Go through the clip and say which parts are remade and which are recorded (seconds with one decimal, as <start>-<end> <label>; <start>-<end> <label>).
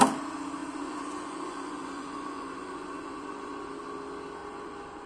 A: 0.0-0.6 recorded; 0.6-3.7 remade; 3.7-4.4 recorded; 4.4-5.1 remade